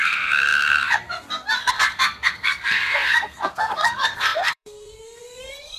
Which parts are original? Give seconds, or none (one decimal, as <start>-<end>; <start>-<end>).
none